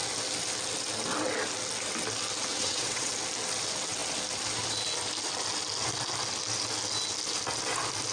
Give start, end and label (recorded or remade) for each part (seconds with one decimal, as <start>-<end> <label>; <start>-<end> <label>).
0.0-2.5 recorded; 2.5-3.1 remade; 3.1-8.1 recorded